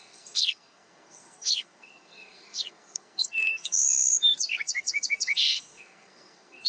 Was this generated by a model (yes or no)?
yes